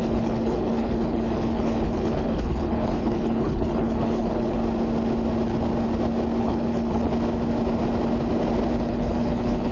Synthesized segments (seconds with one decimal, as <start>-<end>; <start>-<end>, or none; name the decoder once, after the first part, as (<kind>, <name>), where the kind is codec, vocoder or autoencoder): 0.0-4.6 (codec, HILCodec); 6.4-7.1; 8.8-9.7